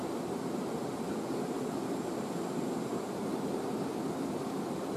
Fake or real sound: real